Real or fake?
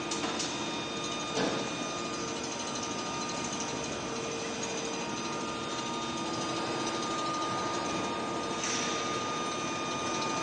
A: real